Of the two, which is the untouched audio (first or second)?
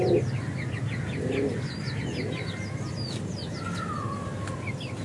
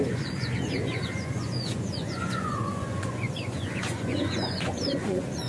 first